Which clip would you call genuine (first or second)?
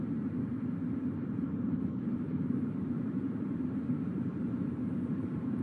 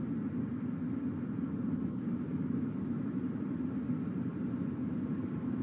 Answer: second